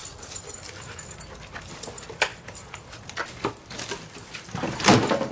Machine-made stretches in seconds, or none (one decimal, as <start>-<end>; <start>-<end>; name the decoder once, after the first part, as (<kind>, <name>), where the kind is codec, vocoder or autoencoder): 0.0-1.6 (vocoder, BigVGAN v2); 2.3-3.5